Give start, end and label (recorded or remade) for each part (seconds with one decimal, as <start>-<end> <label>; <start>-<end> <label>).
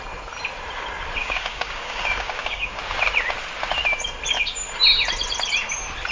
0.0-1.2 recorded; 1.2-2.8 remade; 2.8-6.1 recorded